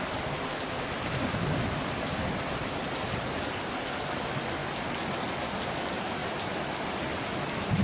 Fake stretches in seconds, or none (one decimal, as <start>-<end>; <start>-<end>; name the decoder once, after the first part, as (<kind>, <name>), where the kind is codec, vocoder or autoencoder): 6.2-6.9 (vocoder, BigVGAN v2)

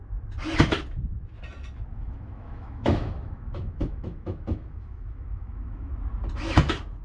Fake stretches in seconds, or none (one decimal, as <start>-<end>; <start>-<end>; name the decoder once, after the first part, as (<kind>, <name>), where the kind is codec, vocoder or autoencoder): 1.9-5.9 (autoencoder, DAC-VAE)

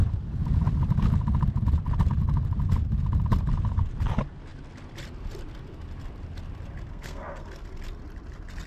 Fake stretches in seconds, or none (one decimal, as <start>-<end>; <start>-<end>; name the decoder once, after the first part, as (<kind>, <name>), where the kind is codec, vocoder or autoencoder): 6.9-7.5 (codec, SNAC)

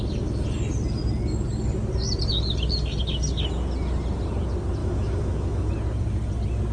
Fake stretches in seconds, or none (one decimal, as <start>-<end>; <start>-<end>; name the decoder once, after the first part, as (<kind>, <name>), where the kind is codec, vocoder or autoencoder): 4.8-5.7 (autoencoder, DAC-VAE)

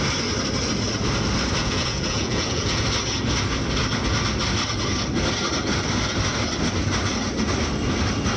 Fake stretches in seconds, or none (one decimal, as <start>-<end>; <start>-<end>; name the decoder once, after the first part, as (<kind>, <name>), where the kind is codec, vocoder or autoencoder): 1.6-2.8 (vocoder, Vocos)

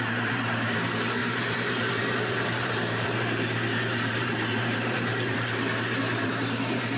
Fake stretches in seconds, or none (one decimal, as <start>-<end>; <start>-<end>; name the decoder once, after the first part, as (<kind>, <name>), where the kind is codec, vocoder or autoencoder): 0.0-7.0 (vocoder, BigVGAN v2)